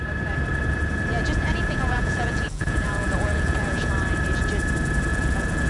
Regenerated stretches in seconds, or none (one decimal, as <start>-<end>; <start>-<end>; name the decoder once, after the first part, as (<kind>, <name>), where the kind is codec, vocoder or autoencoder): 1.1-3.9 (vocoder, Vocos); 5.1-5.7